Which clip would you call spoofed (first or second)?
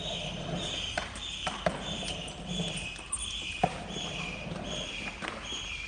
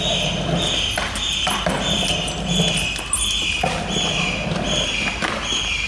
first